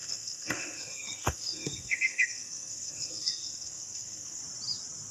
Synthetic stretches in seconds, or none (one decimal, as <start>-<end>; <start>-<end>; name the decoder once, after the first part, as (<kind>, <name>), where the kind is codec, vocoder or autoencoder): 0.0-4.4 (codec, SNAC)